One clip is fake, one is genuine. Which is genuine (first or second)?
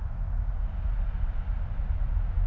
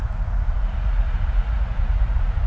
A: first